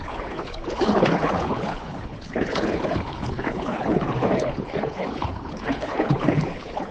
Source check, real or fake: fake